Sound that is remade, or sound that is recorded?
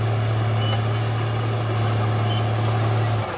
recorded